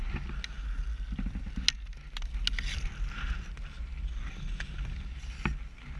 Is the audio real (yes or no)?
yes